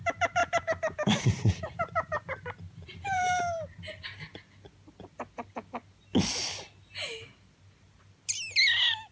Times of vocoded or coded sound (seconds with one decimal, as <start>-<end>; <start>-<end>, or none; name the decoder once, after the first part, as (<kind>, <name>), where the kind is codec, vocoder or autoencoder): 0.4-3.4 (vocoder, BigVGAN v2)